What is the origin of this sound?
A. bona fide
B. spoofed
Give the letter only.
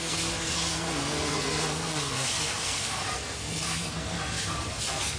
B